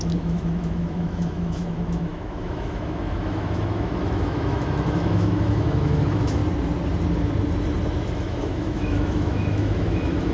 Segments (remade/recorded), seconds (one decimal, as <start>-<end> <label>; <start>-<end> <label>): 0.0-6.4 remade; 6.4-8.1 recorded; 8.1-10.3 remade